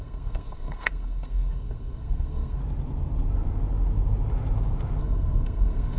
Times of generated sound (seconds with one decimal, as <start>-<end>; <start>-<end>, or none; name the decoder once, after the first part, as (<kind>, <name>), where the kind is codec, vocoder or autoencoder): 0.0-2.6 (codec, SNAC); 5.0-6.0